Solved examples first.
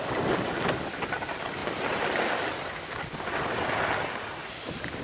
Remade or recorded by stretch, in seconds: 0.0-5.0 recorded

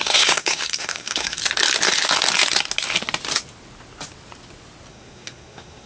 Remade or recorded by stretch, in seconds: 0.0-1.4 remade; 1.4-4.9 recorded; 4.9-5.9 remade

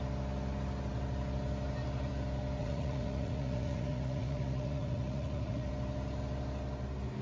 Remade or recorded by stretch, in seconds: 0.0-2.6 recorded; 2.6-5.7 remade; 5.7-7.2 recorded